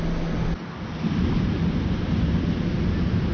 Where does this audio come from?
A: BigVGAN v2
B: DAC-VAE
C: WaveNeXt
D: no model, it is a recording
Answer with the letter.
D